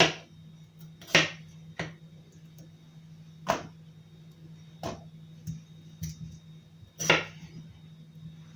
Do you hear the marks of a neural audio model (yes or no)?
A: no